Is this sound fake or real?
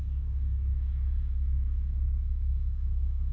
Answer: fake